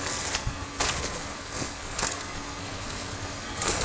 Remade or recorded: remade